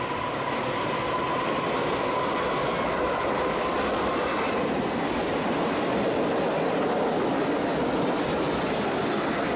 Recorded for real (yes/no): yes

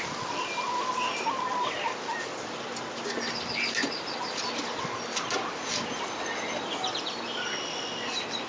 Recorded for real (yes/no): yes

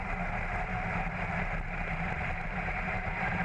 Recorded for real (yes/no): no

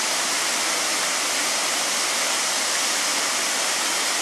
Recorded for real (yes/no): yes